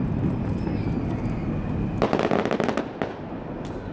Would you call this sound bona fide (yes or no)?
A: yes